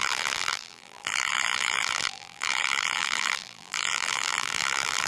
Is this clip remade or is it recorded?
remade